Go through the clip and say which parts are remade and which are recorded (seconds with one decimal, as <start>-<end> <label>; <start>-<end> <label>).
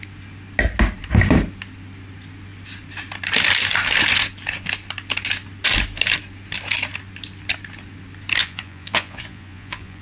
0.0-8.4 recorded; 8.4-10.0 remade